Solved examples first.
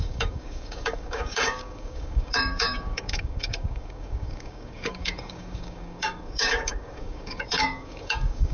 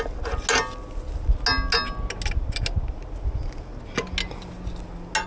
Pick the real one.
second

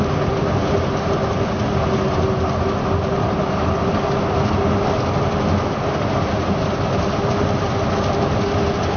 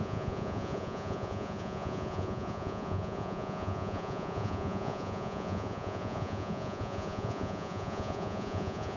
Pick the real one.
first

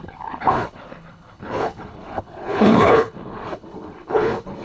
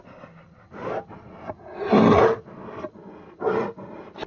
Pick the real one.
second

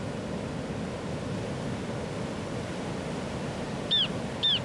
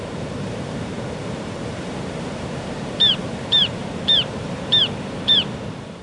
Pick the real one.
first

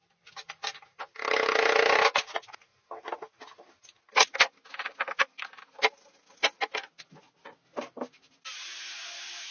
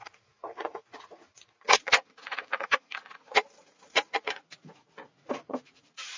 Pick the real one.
first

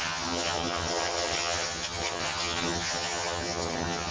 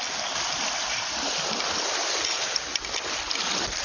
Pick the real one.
second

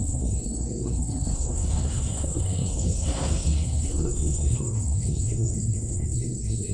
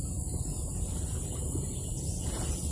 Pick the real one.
second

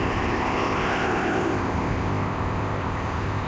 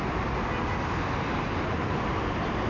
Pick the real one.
second